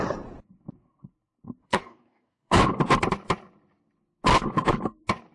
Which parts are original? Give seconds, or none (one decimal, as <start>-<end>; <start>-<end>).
0.0-1.6; 2.6-5.3